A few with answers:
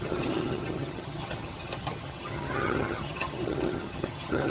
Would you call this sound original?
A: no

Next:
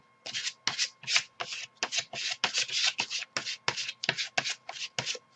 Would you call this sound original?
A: yes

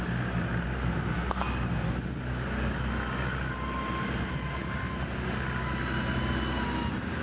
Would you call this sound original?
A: yes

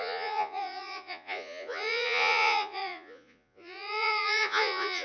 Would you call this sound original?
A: no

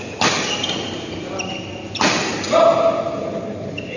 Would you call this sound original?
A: yes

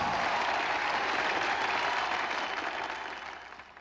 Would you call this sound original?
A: yes